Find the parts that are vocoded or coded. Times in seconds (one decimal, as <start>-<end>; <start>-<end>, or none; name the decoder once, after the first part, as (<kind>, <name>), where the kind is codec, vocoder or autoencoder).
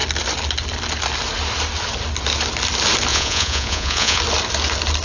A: 3.1-4.2 (vocoder, Vocos)